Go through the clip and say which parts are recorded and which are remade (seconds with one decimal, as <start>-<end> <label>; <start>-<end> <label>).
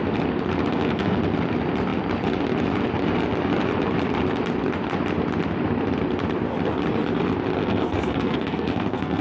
0.0-0.7 recorded; 0.7-1.2 remade; 1.2-7.6 recorded; 7.6-9.2 remade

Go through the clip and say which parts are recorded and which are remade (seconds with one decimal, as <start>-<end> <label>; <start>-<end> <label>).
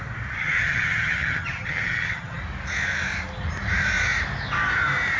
0.0-0.4 recorded; 0.4-2.4 remade; 2.4-5.2 recorded